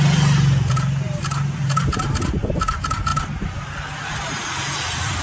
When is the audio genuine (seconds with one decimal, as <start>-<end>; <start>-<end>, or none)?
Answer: 0.0-5.2